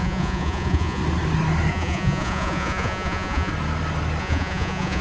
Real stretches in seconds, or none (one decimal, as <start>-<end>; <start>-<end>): 1.0-1.7; 3.5-4.2